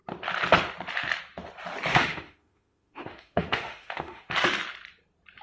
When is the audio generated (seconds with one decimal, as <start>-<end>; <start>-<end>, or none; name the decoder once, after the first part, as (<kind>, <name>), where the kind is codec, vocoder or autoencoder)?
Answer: 1.9-4.3 (autoencoder, DAC-VAE)